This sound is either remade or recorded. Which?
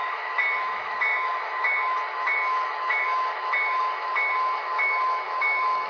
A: remade